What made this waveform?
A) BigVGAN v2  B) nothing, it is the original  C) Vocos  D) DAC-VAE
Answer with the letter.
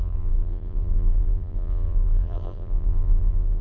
A